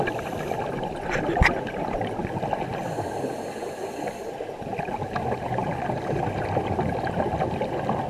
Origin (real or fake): real